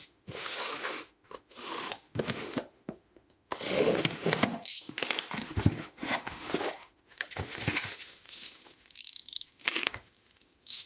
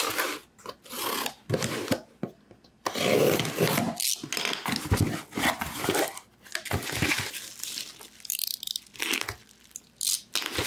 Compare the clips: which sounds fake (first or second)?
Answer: first